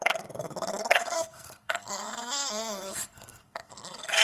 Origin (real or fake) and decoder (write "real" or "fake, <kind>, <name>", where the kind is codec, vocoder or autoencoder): fake, codec, SNAC